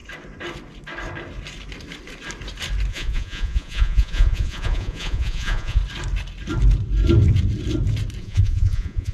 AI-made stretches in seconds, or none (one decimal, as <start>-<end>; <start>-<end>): 2.9-5.8; 8.2-9.1